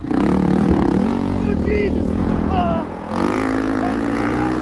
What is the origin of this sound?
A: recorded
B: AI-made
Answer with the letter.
B